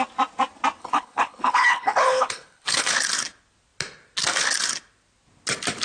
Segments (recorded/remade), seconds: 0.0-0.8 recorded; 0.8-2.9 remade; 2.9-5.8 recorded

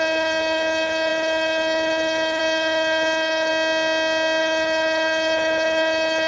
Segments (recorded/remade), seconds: 0.0-3.5 remade; 3.5-4.4 recorded; 4.4-6.3 remade

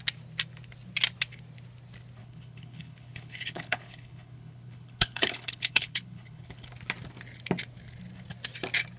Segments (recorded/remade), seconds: 0.0-2.2 recorded; 2.2-6.7 remade; 6.7-9.0 recorded

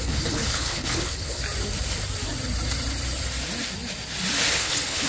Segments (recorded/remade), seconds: 0.0-1.4 remade; 1.4-4.5 recorded; 4.5-5.1 remade

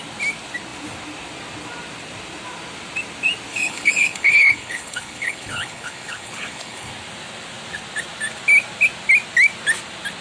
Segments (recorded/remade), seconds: 0.0-3.5 recorded; 3.5-6.9 remade; 6.9-10.2 recorded

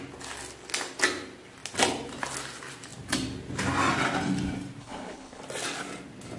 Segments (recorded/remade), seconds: 0.0-4.8 recorded; 4.8-5.4 remade; 5.4-6.4 recorded

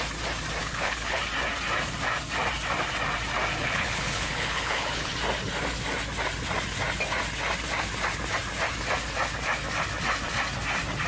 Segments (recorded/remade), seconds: 0.0-0.6 recorded; 0.6-1.2 remade; 1.2-3.6 recorded; 3.6-5.1 remade; 5.1-11.1 recorded